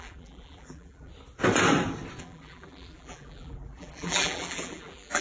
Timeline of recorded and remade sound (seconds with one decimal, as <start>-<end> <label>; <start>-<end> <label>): 0.0-1.1 remade; 1.1-2.2 recorded; 2.2-5.2 remade